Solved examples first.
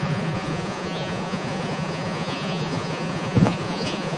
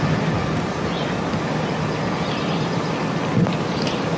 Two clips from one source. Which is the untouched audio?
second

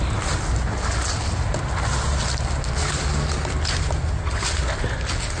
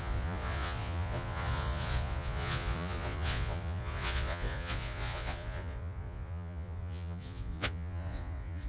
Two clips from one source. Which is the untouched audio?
first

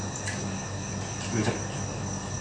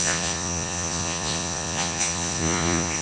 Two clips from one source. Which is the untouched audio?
first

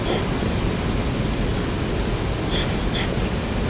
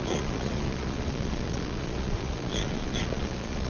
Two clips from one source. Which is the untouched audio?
first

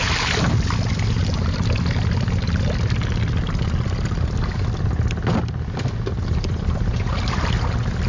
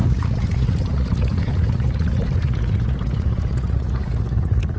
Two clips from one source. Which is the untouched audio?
first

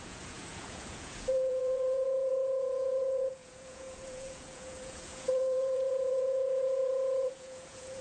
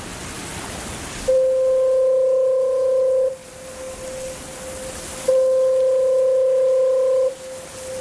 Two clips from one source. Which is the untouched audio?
second